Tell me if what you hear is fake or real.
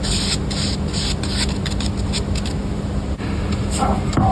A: real